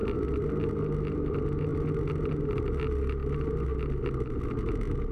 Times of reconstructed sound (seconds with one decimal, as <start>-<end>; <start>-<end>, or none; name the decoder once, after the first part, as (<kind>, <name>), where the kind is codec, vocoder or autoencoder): none